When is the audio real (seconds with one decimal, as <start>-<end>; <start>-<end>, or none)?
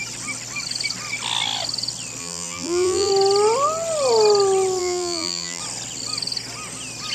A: 0.0-2.2; 3.1-4.8; 5.6-7.1